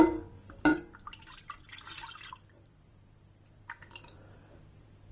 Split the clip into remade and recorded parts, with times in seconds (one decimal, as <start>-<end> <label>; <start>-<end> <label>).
0.0-5.1 remade